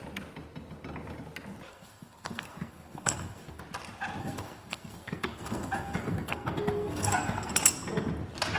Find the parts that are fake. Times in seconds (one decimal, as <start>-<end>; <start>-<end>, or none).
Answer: 1.7-3.6; 4.2-7.5